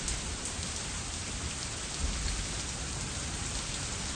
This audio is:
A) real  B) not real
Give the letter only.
A